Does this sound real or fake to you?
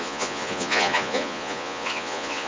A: fake